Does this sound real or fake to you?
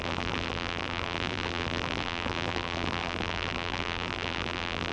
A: fake